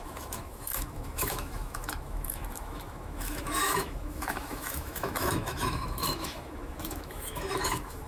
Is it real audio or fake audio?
fake